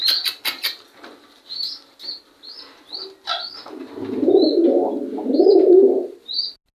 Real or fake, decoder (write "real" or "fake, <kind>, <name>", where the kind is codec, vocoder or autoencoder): real